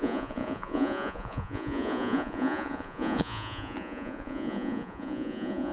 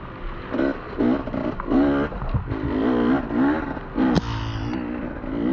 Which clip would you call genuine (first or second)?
second